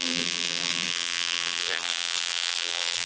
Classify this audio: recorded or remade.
remade